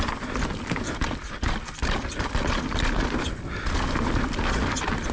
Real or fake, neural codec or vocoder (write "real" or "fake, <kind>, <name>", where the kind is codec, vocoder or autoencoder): real